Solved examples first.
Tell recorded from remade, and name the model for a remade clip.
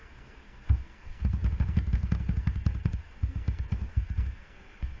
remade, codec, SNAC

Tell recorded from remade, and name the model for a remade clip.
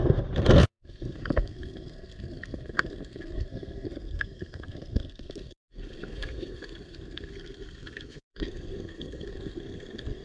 remade, codec, SNAC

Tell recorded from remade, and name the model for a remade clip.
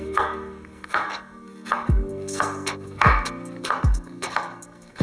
remade, codec, SNAC